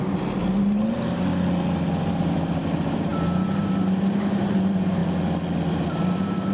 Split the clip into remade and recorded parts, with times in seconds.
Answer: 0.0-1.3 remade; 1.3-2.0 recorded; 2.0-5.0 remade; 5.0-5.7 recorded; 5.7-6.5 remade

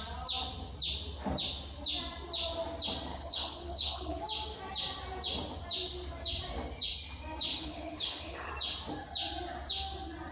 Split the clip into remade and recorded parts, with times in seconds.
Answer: 0.0-3.1 recorded; 3.1-4.2 remade; 4.2-7.5 recorded; 7.5-8.5 remade; 8.5-10.3 recorded

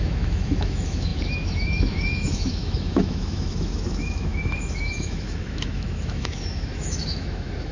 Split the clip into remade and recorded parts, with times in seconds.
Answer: 0.0-7.7 remade

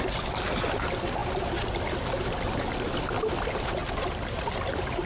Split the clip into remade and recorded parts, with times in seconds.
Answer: 0.0-5.1 recorded

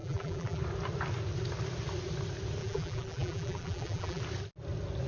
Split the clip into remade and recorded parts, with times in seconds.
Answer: 0.0-0.6 remade; 0.6-2.6 recorded; 2.6-4.2 remade; 4.2-5.1 recorded